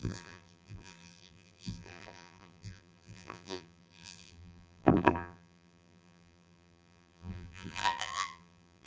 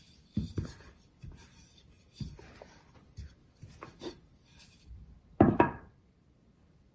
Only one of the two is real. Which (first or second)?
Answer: second